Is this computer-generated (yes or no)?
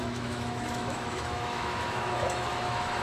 yes